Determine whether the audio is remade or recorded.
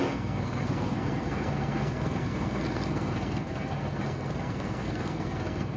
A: remade